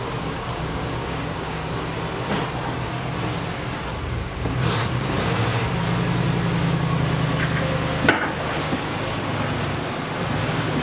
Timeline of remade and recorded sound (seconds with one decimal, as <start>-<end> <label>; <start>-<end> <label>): 0.0-1.6 remade; 1.6-4.0 recorded; 4.0-5.4 remade; 5.4-8.4 recorded; 8.4-9.6 remade; 9.6-10.4 recorded; 10.4-10.8 remade